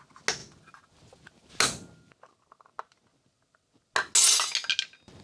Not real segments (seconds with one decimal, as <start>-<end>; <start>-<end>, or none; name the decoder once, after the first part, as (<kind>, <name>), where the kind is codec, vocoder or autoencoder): none